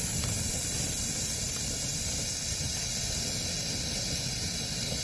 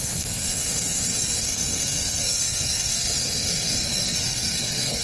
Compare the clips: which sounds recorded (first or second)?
first